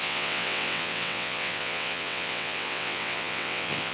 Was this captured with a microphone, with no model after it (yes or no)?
no